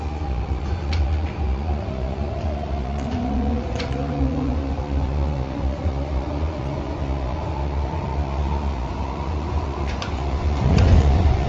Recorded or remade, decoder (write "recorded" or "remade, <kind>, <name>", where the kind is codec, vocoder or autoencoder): remade, vocoder, Vocos